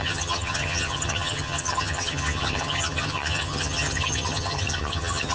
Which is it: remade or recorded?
remade